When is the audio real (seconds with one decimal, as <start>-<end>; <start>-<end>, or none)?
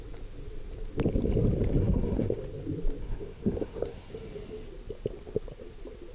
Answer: 0.0-1.8; 2.4-3.0; 4.1-6.1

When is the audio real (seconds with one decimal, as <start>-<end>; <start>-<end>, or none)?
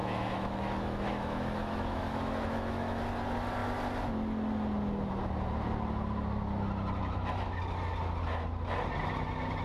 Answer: 3.0-7.0; 7.6-9.6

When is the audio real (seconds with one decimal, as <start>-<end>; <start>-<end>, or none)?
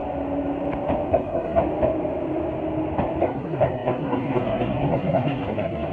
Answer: 0.0-1.1; 1.6-3.2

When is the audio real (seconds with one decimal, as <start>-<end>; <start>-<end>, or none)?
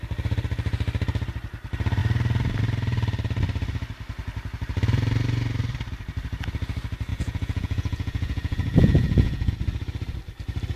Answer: 0.0-7.1; 9.5-10.8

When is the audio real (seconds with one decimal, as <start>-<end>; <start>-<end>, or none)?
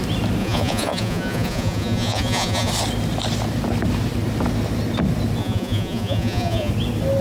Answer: 0.0-0.4; 2.7-5.4; 6.7-7.2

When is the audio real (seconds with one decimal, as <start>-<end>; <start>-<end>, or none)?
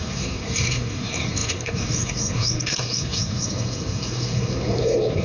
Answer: none